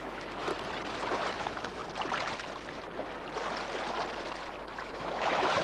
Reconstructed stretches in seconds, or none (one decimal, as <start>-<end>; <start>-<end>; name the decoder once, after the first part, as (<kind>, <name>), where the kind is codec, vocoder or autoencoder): 0.0-0.5 (autoencoder, DAC-VAE); 1.3-1.8; 4.9-5.6